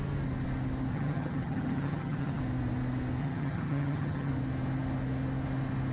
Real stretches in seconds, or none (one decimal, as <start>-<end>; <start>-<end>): 0.0-0.9; 2.4-3.2; 4.3-5.9